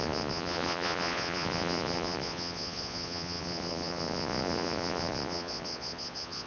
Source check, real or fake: fake